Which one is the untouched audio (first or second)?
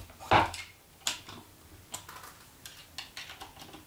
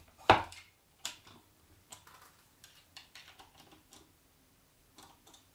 first